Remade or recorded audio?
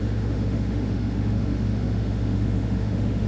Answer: remade